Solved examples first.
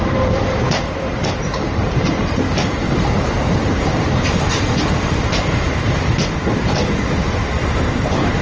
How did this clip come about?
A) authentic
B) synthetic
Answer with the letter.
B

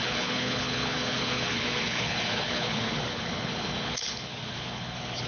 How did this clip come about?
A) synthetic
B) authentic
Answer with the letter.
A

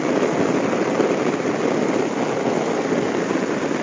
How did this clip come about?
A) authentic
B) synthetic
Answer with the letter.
A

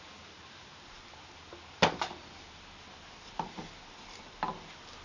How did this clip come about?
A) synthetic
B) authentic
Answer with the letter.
B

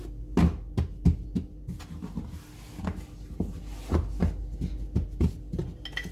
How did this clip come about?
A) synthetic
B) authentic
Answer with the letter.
B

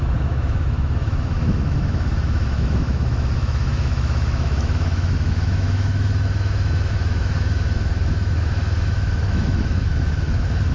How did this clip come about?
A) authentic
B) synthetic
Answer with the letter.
B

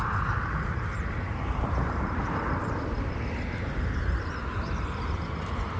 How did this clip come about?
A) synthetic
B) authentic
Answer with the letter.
A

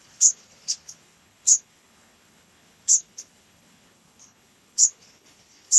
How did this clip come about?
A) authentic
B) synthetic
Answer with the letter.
B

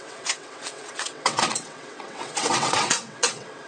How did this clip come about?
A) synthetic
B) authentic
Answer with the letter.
A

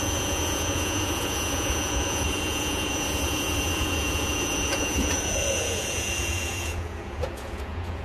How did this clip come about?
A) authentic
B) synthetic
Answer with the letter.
B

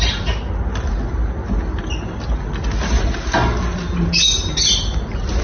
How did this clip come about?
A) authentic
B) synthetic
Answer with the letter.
A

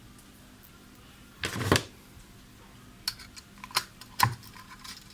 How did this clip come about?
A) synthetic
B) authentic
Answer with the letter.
B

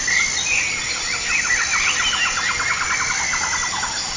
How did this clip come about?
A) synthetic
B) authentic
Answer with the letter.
B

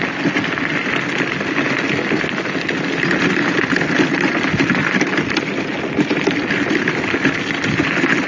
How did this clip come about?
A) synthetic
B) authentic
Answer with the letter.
B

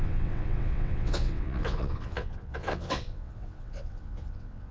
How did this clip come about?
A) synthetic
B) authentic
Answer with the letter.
A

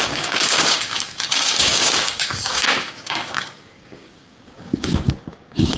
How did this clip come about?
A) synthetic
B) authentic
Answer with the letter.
A